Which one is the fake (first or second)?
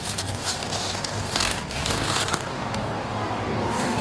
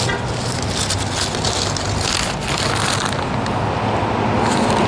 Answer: first